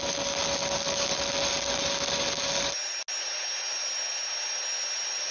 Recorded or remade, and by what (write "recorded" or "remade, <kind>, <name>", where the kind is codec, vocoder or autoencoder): recorded